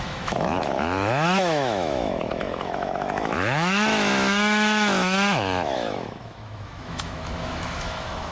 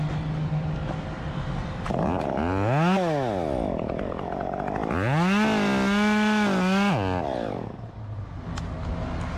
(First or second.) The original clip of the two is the second